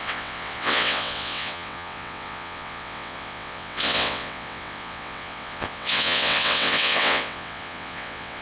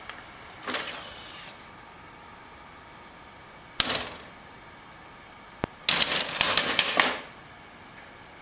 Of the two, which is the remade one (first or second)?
first